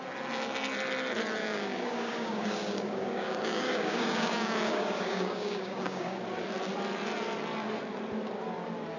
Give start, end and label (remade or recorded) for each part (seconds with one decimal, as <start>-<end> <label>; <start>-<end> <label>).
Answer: 0.0-1.4 recorded; 1.4-6.2 remade; 6.2-9.0 recorded

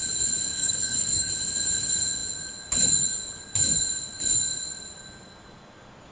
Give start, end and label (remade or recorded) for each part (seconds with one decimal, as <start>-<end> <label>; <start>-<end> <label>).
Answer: 0.0-0.5 recorded; 0.5-1.3 remade; 1.3-6.1 recorded

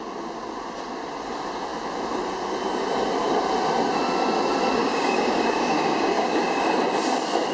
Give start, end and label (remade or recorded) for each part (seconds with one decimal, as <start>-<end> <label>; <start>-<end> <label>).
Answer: 0.0-4.8 recorded; 4.8-6.6 remade; 6.6-7.5 recorded

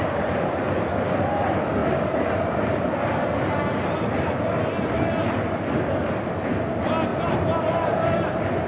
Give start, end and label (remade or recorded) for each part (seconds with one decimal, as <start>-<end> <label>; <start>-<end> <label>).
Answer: 0.0-8.7 recorded